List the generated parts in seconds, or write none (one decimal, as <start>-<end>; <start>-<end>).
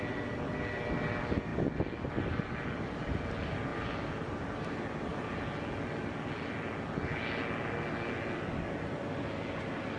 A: 0.0-1.5; 2.1-5.1; 8.4-10.0